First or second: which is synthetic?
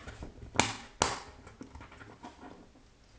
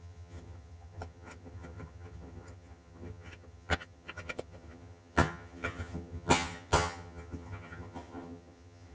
second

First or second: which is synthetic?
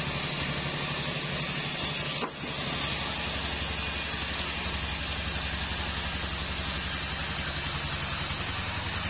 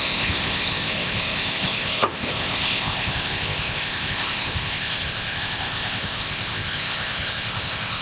second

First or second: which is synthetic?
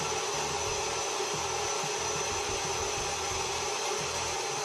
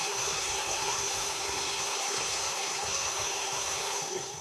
second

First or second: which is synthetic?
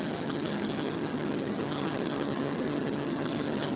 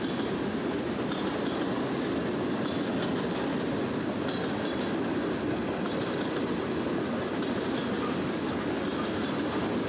first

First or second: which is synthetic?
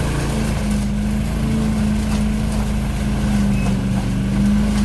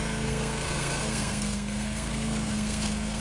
second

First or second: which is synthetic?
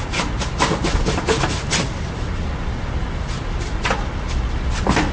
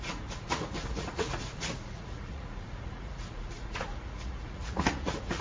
second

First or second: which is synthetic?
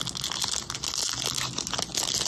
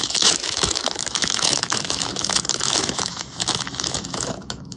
second